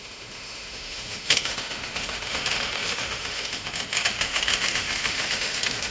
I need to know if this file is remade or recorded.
remade